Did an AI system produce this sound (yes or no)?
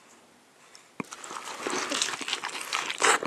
no